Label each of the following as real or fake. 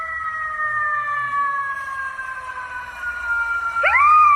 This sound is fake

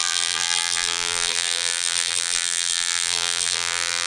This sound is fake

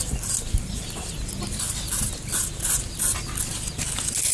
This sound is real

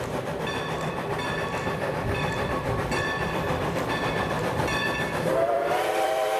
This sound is fake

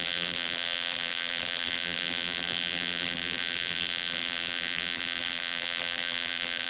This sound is fake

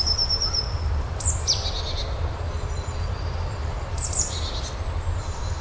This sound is fake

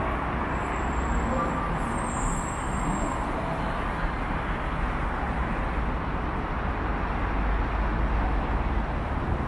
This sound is real